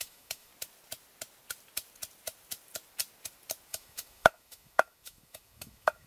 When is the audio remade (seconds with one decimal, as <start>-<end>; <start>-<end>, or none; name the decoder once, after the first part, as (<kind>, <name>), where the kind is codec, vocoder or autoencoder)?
0.0-0.5 (autoencoder, DAC-VAE); 3.7-6.1